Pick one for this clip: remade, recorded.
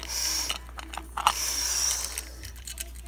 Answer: recorded